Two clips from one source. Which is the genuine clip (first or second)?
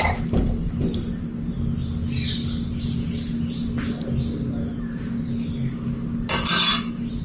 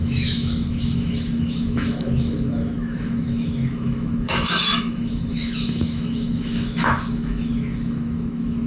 first